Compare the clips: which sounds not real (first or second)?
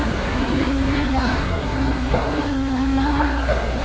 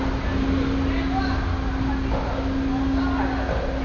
first